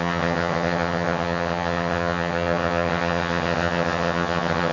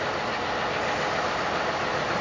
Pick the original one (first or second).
second